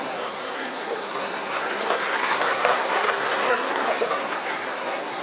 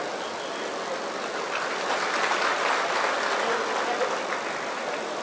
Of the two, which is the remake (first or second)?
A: first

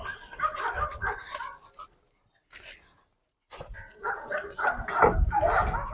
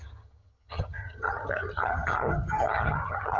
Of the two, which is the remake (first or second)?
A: second